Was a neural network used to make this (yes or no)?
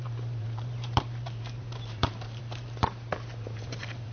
yes